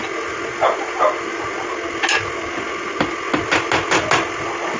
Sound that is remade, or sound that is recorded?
recorded